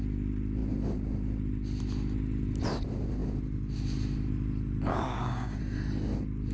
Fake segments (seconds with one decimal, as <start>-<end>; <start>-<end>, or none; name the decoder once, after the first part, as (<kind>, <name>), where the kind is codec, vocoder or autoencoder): 4.9-5.6 (codec, DAC)